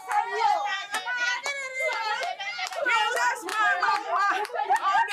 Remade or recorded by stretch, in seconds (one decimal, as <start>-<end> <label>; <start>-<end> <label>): 0.0-3.5 recorded; 3.5-5.1 remade